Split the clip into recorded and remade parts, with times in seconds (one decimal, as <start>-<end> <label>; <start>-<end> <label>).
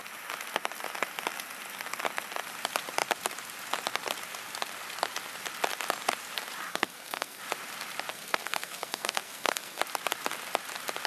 0.0-6.7 recorded; 6.7-7.4 remade; 7.4-8.1 recorded; 8.1-9.8 remade; 9.8-11.1 recorded